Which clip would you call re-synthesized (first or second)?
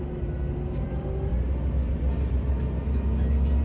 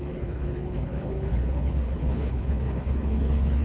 second